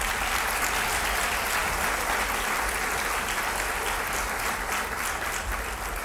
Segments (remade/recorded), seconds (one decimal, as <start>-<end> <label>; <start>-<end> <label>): 0.0-6.0 recorded